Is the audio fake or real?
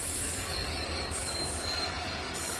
fake